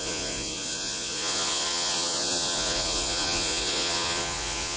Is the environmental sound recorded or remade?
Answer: remade